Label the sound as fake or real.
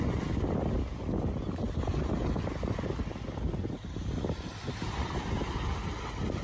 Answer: real